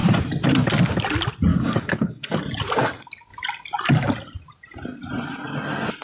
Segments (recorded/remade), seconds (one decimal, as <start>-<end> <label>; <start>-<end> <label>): 0.0-1.5 recorded; 1.5-2.4 remade; 2.4-6.0 recorded